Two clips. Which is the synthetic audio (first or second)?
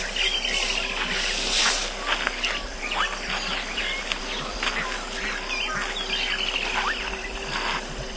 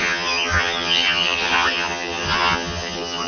second